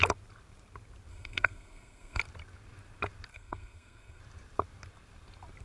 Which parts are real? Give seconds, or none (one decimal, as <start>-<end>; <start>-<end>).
0.0-1.1; 2.2-3.3; 4.2-5.6